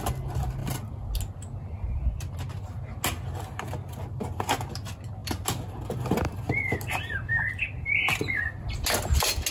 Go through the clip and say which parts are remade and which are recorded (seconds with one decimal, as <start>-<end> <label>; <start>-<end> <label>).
0.0-9.5 recorded